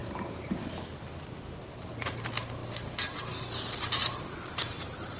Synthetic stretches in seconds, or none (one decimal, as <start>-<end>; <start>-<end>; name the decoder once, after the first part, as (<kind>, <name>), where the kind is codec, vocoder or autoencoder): 2.6-3.2 (vocoder, BigVGAN v2)